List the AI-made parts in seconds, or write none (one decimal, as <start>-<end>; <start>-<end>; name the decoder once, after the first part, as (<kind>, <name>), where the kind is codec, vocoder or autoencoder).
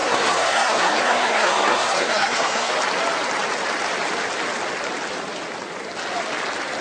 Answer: 0.0-2.7 (codec, SNAC)